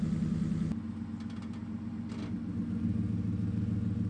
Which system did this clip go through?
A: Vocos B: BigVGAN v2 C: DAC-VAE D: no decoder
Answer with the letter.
D